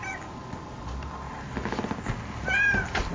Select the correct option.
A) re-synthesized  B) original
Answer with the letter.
B